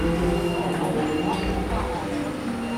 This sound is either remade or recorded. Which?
recorded